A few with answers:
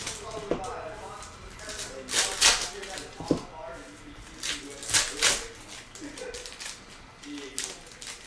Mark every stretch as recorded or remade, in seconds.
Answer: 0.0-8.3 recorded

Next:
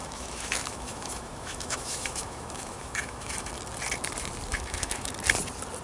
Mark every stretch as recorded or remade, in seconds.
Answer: 0.0-3.5 remade; 3.5-4.5 recorded; 4.5-5.1 remade; 5.1-5.8 recorded

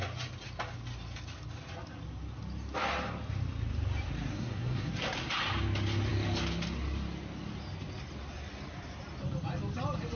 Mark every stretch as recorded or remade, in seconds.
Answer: 0.0-4.3 recorded; 4.3-4.9 remade; 4.9-10.2 recorded

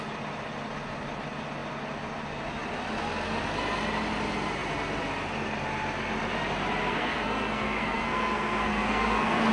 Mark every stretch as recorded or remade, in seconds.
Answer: 0.0-6.8 recorded; 6.8-9.5 remade

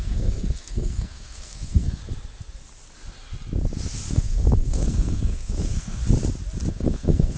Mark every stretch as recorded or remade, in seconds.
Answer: 0.0-2.0 remade; 2.0-4.1 recorded; 4.1-6.0 remade; 6.0-6.7 recorded; 6.7-7.4 remade

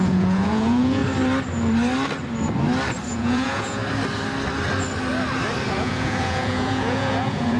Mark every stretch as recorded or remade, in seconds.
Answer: 0.0-1.0 remade; 1.0-3.1 recorded; 3.1-3.8 remade; 3.8-5.7 recorded; 5.7-7.6 remade